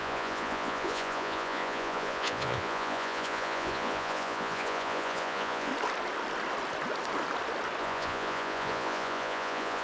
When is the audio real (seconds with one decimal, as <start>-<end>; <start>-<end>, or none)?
5.7-7.8